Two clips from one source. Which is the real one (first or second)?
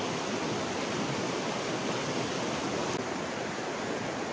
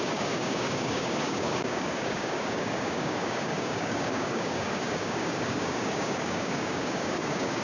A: first